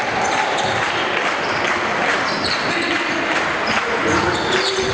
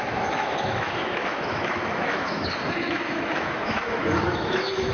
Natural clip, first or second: first